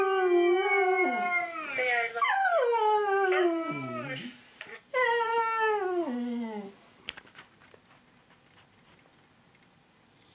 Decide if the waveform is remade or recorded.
recorded